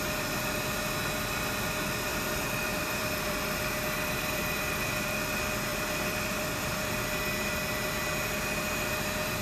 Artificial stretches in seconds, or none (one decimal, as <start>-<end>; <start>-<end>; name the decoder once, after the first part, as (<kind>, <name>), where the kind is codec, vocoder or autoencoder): 2.1-5.0 (vocoder, BigVGAN v2); 5.7-6.8